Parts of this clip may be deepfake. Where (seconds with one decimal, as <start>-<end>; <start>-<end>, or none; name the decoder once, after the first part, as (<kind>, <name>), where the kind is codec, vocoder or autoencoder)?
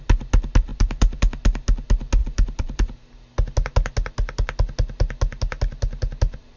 0.7-1.2 (vocoder, BigVGAN v2); 2.2-3.0